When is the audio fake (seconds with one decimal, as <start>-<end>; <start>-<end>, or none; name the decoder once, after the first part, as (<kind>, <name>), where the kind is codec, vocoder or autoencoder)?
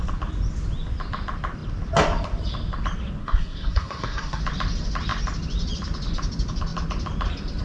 3.2-4.4 (codec, SNAC)